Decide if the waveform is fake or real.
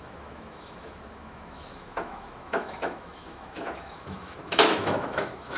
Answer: fake